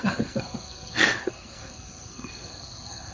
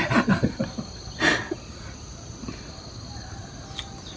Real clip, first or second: second